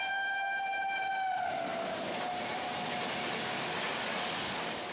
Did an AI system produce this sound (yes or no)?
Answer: no